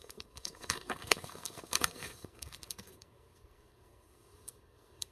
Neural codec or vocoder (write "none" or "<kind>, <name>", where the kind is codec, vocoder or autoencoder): codec, SNAC